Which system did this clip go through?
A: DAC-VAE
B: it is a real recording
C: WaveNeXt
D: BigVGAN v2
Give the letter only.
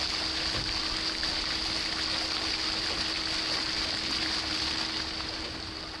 B